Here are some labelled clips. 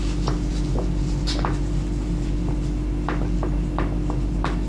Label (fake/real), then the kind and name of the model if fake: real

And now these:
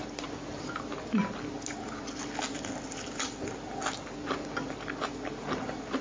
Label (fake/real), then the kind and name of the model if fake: real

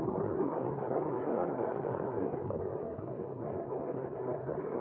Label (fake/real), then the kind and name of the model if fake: fake, codec, SNAC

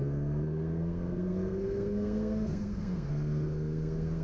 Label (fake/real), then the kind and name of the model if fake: fake, codec, SNAC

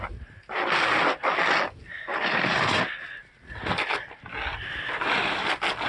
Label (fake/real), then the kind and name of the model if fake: real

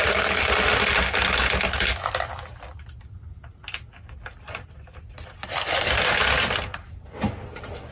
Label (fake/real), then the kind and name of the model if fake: real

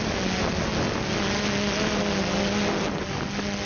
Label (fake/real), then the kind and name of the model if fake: real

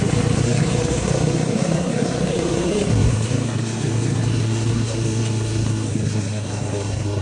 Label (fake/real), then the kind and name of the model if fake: fake, codec, SNAC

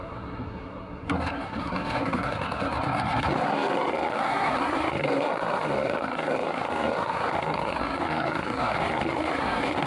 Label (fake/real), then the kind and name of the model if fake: fake, codec, SNAC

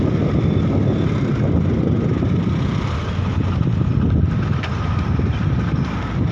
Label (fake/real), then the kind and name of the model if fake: real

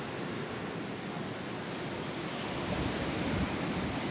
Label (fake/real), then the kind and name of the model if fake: real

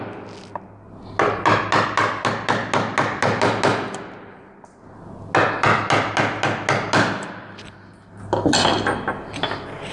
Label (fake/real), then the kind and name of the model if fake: real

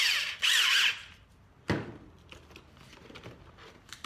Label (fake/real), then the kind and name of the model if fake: real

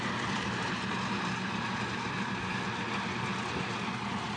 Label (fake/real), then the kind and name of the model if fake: real